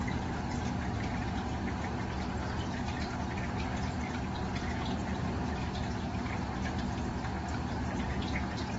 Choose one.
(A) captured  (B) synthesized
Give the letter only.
A